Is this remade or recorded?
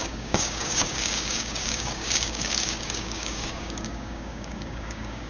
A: remade